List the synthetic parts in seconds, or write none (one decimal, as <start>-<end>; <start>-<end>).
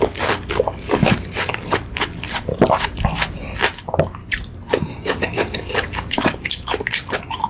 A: 0.0-2.5; 3.8-4.2; 5.0-7.5